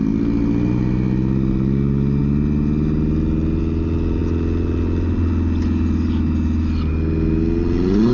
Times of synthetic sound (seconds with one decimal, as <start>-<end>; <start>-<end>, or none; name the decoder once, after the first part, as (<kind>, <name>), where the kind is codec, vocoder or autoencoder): none